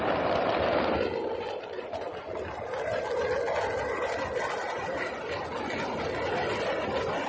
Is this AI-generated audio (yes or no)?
no